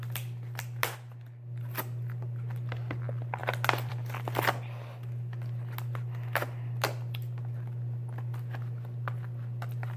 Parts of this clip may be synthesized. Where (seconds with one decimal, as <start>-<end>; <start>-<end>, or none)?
none